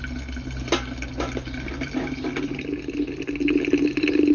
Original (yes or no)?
yes